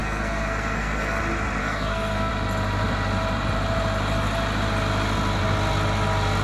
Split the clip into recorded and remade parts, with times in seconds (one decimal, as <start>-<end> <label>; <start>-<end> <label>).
0.0-1.2 remade; 1.2-1.6 recorded; 1.6-2.3 remade; 2.3-6.4 recorded